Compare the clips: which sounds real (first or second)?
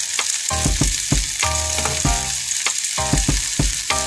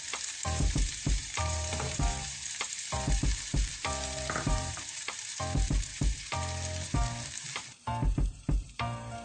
first